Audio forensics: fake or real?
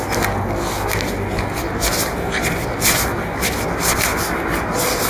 real